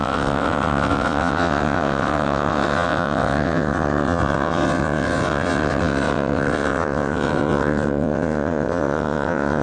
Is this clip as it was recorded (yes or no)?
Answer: no